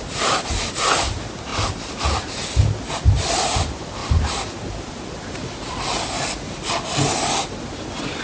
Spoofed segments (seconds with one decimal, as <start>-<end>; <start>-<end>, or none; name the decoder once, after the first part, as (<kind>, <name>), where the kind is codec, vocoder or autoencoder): 4.0-4.9 (vocoder, BigVGAN v2)

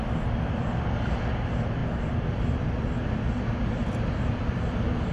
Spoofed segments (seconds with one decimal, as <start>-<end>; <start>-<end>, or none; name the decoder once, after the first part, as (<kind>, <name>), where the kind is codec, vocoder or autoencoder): 3.8-5.1 (vocoder, BigVGAN v2)

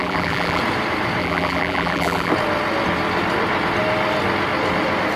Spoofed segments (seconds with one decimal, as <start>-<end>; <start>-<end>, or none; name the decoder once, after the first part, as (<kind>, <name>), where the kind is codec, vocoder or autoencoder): 0.0-0.6 (vocoder, BigVGAN v2); 1.2-2.3